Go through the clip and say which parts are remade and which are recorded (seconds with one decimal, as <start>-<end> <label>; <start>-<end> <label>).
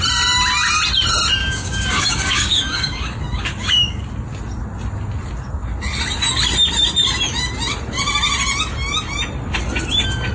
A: 0.0-1.4 recorded; 1.4-4.1 remade; 4.1-10.3 recorded